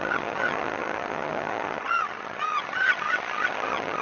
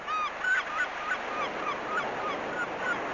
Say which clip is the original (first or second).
second